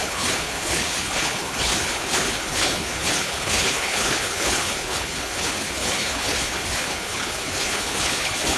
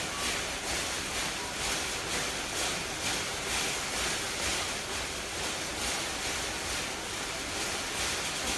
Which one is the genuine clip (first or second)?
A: second